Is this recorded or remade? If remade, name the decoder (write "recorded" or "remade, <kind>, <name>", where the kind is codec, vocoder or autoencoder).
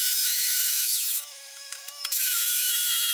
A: remade, autoencoder, DAC-VAE